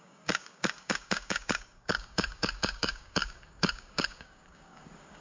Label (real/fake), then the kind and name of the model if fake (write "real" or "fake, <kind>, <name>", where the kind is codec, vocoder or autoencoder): fake, codec, DAC